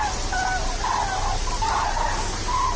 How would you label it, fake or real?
real